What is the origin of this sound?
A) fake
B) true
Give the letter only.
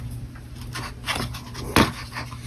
B